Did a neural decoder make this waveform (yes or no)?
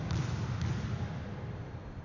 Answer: no